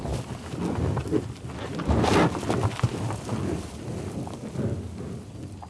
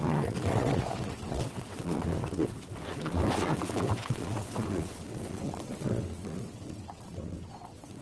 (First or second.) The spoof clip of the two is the second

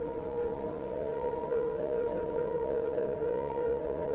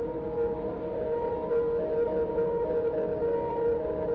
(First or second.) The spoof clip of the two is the first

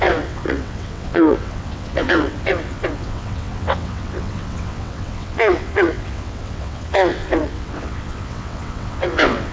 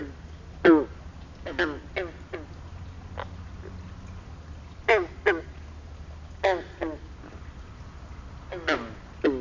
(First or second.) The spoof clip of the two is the first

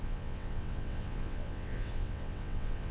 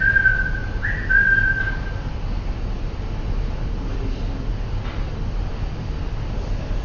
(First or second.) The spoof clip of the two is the first